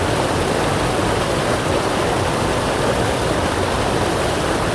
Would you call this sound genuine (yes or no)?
yes